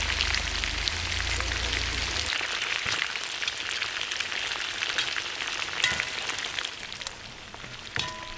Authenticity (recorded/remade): recorded